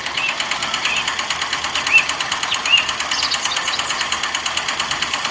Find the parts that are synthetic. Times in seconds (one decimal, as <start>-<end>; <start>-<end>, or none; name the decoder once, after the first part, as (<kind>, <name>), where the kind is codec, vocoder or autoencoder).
none